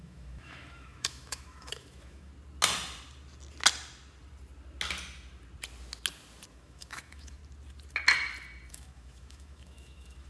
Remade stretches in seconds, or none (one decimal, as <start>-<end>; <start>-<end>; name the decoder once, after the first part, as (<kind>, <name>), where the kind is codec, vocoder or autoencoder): 0.0-2.3 (autoencoder, DAC-VAE); 6.5-7.4; 8.7-10.3